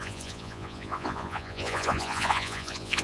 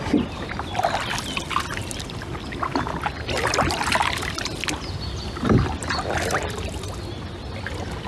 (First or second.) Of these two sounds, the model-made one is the first